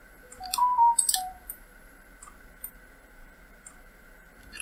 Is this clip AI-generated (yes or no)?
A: yes